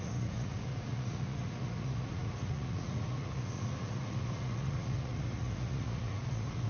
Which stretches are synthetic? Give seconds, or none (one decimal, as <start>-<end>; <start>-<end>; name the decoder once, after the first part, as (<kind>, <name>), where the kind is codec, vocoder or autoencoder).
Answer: 0.0-6.7 (vocoder, Vocos)

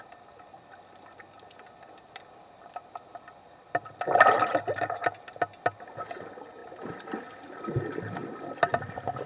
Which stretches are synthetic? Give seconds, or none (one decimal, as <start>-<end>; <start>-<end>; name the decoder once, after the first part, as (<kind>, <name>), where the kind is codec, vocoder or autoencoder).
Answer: none

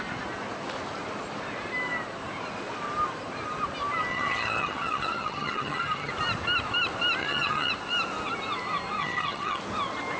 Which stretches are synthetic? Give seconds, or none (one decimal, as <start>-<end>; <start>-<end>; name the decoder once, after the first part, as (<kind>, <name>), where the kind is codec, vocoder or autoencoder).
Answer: 4.1-6.1 (vocoder, HiFi-GAN); 7.2-7.7; 9.0-9.6

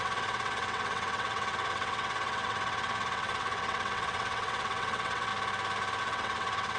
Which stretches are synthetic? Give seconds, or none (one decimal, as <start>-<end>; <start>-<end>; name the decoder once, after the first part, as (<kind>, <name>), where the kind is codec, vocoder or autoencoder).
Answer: 0.0-5.3 (vocoder, WaveNeXt); 6.0-6.8

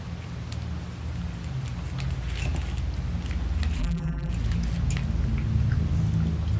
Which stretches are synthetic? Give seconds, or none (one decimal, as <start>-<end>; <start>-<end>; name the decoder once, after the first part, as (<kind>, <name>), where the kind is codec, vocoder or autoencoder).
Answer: 3.8-4.3 (vocoder, BigVGAN v2)

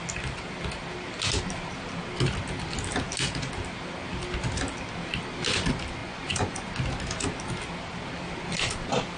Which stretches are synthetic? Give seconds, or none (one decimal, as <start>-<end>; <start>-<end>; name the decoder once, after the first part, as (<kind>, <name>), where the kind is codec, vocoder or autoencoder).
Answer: 6.0-6.7 (vocoder, Vocos)